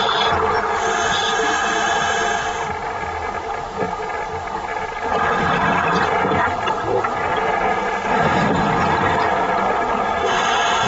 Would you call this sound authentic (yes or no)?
yes